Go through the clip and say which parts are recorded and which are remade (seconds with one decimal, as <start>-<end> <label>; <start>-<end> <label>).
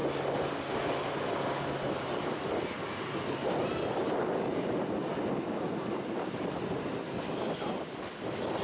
0.0-8.6 recorded